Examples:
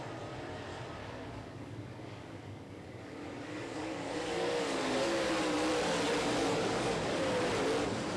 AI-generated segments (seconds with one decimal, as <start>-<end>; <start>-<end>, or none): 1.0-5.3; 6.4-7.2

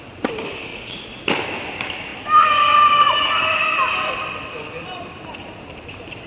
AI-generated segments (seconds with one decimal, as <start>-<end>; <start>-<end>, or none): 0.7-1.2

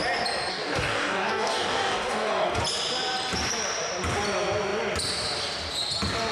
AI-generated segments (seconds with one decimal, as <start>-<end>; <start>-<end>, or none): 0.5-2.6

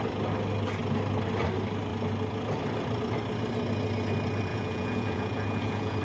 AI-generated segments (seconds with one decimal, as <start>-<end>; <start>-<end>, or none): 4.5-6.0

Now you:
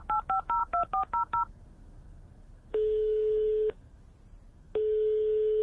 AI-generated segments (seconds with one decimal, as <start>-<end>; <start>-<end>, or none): 0.6-4.0; 4.5-5.6